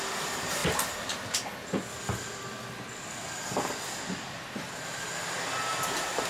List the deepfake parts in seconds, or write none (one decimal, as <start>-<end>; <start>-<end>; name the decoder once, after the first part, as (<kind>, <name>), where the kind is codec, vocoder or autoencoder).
none